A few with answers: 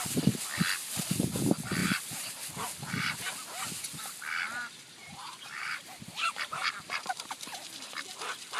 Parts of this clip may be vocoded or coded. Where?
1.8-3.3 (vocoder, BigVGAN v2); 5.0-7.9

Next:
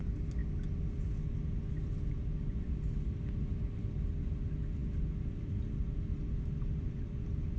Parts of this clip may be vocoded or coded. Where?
none

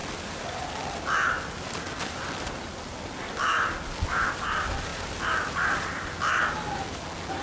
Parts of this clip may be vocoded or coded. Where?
none